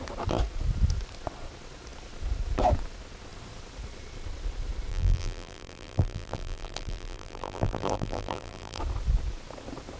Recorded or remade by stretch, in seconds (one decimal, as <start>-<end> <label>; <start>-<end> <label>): 0.0-4.9 recorded; 4.9-8.8 remade; 8.8-10.0 recorded